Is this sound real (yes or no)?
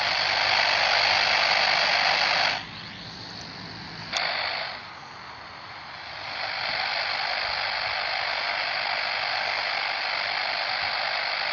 yes